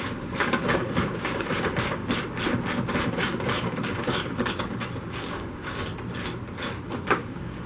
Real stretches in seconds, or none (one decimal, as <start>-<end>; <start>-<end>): 2.0-3.1; 5.9-6.8